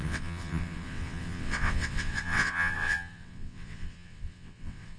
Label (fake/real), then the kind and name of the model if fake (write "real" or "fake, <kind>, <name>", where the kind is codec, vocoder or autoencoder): fake, vocoder, WaveNeXt